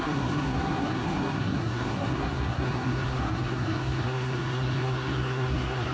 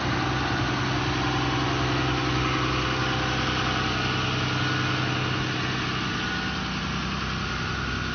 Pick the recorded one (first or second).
second